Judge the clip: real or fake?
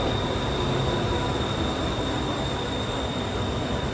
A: real